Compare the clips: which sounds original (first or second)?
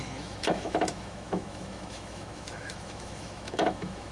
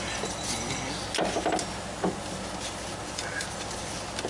second